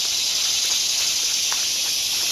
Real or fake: real